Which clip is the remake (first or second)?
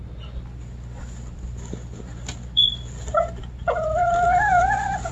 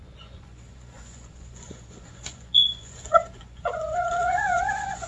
second